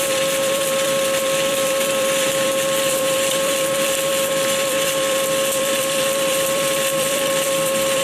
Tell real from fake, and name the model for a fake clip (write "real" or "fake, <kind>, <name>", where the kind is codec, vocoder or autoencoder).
fake, vocoder, BigVGAN v2